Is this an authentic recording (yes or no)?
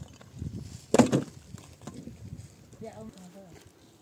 yes